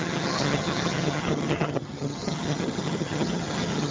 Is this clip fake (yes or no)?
yes